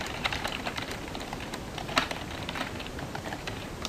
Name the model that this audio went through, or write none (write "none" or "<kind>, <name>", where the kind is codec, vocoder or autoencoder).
vocoder, BigVGAN v2